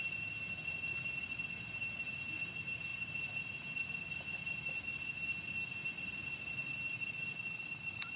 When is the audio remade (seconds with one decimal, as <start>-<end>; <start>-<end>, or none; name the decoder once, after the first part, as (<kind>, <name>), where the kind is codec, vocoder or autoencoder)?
none